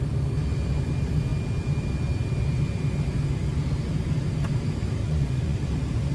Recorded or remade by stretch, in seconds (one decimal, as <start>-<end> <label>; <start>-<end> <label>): 0.0-5.0 recorded; 5.0-5.6 remade; 5.6-6.1 recorded